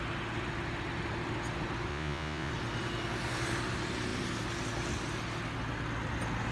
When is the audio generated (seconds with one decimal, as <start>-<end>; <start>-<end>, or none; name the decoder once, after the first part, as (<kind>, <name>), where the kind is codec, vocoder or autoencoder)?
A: 1.9-2.5 (vocoder, Vocos)